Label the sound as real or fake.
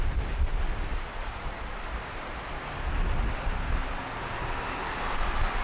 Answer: real